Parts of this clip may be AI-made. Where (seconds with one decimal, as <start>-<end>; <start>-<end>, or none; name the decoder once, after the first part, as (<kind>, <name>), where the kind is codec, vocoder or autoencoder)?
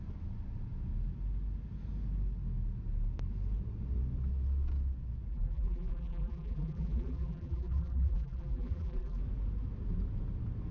5.3-9.2 (vocoder, BigVGAN v2)